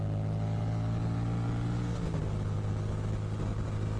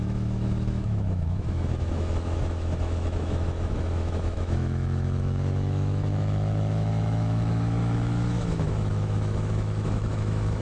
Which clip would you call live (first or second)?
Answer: first